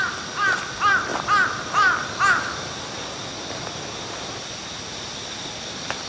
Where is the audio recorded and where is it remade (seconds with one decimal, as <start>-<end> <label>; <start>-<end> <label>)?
0.0-6.1 recorded

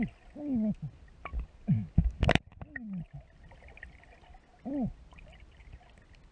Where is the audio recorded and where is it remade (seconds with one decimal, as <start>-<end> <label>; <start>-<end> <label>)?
0.0-6.3 recorded